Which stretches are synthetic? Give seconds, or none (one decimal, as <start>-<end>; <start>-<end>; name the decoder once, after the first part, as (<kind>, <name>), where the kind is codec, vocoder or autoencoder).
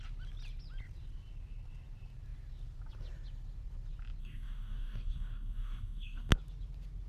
4.2-6.3 (codec, DAC)